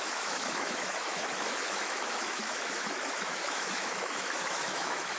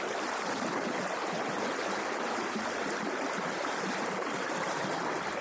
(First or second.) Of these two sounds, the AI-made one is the first